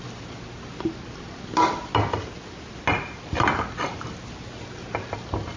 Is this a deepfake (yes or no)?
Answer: no